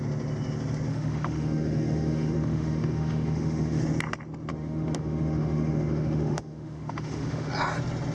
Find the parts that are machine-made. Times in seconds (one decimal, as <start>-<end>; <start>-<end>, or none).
0.9-3.8; 4.5-7.5